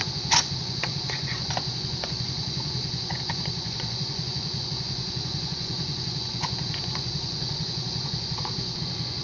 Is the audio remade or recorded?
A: remade